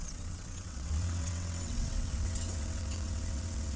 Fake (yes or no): yes